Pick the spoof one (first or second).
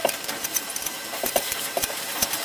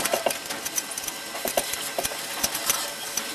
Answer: first